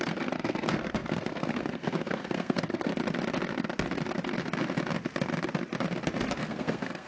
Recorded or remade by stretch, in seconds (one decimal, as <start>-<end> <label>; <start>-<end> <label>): 0.0-2.9 remade; 2.9-6.4 recorded; 6.4-7.1 remade